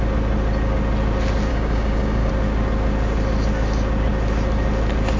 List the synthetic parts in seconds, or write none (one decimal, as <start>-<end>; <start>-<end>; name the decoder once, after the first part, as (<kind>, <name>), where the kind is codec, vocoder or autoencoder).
1.5-2.3 (codec, DAC)